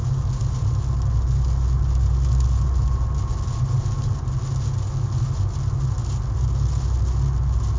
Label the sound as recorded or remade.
recorded